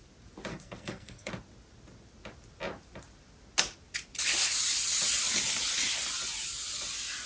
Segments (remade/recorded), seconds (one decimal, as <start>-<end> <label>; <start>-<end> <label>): 0.0-0.5 recorded; 0.5-1.3 remade; 1.3-7.3 recorded